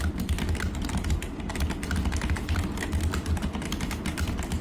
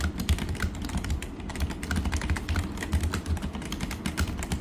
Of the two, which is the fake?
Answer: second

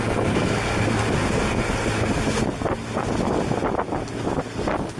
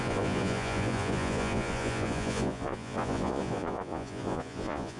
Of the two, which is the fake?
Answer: second